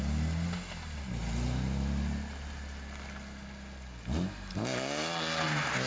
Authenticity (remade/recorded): recorded